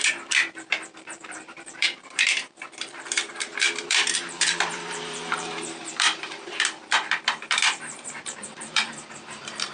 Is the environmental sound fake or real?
fake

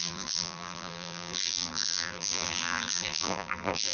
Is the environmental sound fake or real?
fake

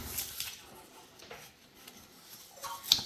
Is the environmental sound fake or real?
real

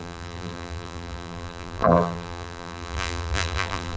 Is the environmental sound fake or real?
fake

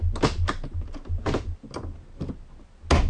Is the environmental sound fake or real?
real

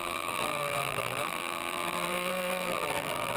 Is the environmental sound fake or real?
fake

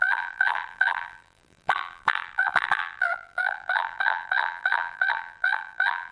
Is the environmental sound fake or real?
fake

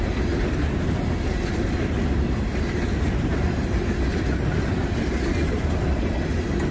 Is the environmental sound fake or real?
real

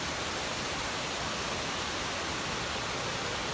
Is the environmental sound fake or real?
real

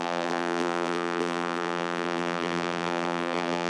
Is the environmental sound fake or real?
fake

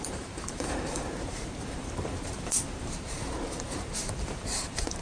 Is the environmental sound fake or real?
fake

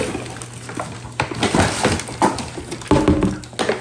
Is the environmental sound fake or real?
real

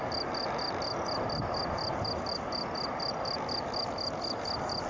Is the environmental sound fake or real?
real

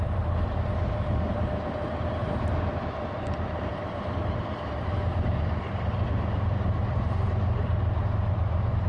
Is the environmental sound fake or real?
fake